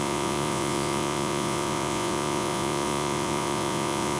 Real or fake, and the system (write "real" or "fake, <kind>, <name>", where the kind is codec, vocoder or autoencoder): fake, vocoder, Vocos